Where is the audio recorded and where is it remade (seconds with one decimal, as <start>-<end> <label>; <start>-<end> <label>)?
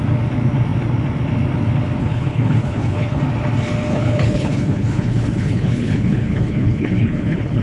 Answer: 0.0-2.0 recorded; 2.0-3.2 remade; 3.2-3.9 recorded; 3.9-7.6 remade